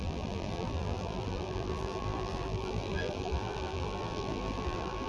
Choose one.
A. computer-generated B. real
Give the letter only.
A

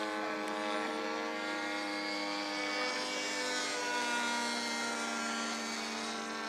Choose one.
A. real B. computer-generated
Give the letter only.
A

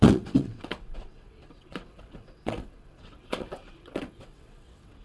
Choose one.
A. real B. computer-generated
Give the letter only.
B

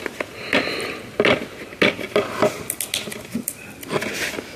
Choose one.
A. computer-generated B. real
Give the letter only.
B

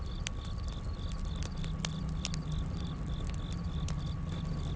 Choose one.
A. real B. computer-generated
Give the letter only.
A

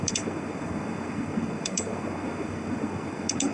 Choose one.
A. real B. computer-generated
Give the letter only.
B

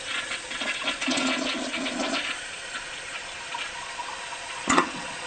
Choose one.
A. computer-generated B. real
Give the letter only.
A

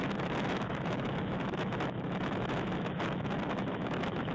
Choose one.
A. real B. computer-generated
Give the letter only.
B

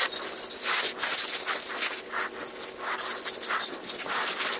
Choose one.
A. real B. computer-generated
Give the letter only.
A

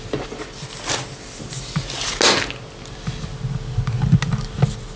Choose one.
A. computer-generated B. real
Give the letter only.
B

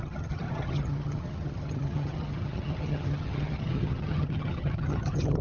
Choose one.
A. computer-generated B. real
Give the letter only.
A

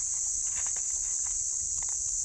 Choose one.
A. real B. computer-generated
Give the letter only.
A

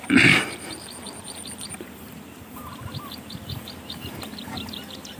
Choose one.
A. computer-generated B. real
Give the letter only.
A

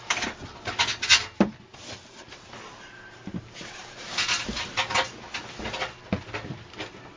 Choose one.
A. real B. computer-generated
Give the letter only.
A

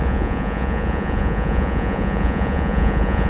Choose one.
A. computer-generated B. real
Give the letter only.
A